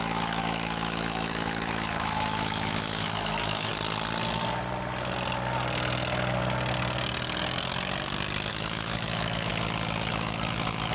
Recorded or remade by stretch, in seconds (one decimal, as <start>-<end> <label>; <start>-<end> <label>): 0.0-3.7 remade; 3.7-8.5 recorded; 8.5-9.5 remade; 9.5-10.1 recorded; 10.1-10.9 remade